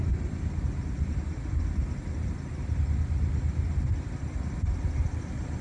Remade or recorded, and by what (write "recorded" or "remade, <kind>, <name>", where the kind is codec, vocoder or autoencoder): recorded